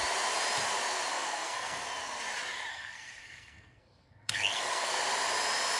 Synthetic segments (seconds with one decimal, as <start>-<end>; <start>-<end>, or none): 1.1-1.8; 2.7-5.0